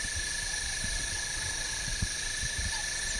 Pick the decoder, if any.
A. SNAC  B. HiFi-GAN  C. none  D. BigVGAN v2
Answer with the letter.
C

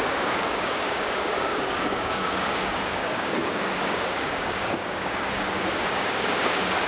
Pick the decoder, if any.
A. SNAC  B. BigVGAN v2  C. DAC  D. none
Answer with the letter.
C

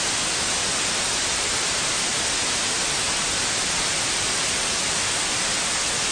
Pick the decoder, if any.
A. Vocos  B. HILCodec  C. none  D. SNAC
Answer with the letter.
C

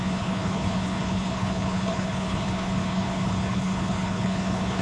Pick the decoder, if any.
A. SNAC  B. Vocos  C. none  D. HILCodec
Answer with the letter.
D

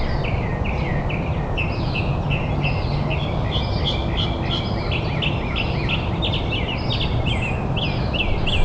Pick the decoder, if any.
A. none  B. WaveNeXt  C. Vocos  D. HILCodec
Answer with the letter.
A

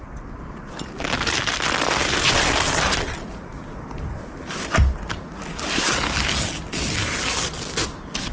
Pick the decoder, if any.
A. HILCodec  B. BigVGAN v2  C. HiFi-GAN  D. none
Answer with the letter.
D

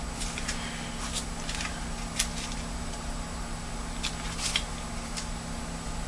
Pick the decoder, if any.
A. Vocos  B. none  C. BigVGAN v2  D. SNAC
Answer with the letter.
B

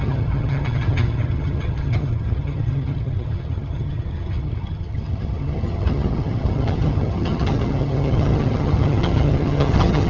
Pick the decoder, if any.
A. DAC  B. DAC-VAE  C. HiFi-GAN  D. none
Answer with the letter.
C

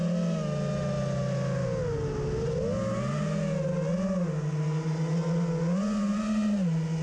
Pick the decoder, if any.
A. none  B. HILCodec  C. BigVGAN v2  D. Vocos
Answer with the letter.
A